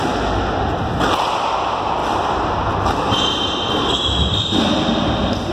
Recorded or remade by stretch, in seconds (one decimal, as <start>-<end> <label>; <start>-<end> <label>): 0.0-5.5 recorded